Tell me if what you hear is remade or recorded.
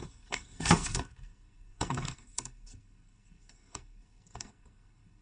remade